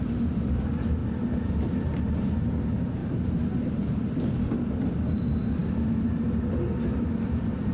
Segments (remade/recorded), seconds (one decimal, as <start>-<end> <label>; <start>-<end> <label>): 0.0-7.7 recorded

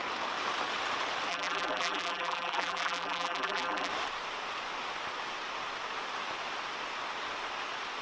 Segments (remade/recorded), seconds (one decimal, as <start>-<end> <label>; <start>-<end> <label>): 0.0-1.3 recorded; 1.3-3.9 remade; 3.9-8.0 recorded

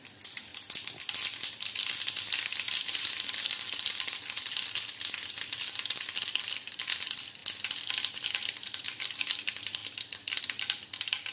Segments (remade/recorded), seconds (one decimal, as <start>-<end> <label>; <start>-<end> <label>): 0.0-0.5 remade; 0.5-5.6 recorded; 5.6-7.4 remade; 7.4-9.2 recorded; 9.2-11.3 remade

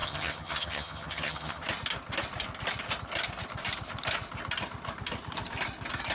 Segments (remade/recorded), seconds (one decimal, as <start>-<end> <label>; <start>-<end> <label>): 0.0-1.6 remade; 1.6-6.1 recorded